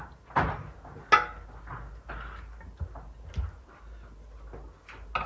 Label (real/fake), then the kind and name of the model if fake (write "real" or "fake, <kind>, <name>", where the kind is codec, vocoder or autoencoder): real